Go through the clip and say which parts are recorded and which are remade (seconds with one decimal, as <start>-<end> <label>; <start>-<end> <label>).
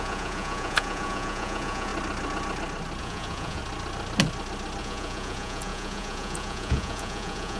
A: 0.0-1.9 remade; 1.9-3.0 recorded; 3.0-3.6 remade; 3.6-4.8 recorded; 4.8-7.6 remade